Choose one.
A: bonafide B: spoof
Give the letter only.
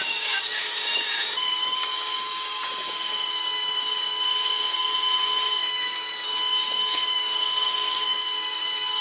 B